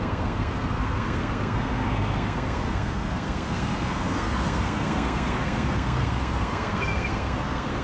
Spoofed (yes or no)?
yes